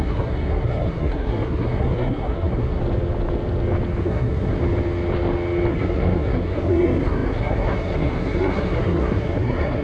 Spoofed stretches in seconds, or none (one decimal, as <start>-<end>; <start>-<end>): 0.0-2.8; 4.0-4.6; 5.7-9.8